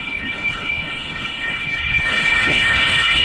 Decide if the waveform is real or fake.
fake